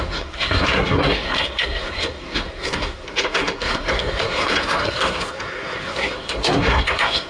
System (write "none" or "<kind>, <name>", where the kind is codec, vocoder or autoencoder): codec, SNAC